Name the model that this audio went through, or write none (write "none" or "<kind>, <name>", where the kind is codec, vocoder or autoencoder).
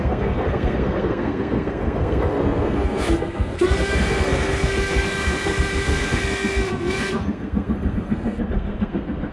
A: codec, SNAC